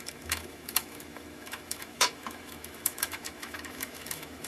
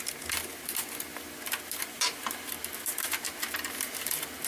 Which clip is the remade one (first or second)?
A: first